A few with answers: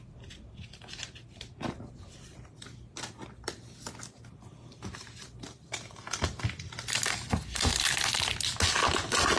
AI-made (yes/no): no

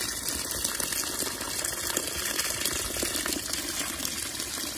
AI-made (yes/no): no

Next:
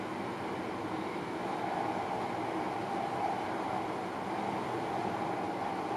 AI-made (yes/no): no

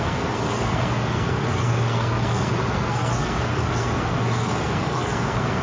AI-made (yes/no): yes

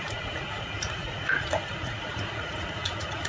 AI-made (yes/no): yes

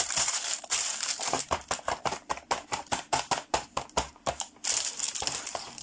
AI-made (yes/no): yes